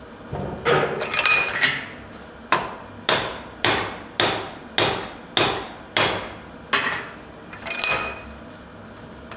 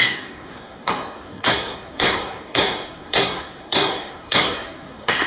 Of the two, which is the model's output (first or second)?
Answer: second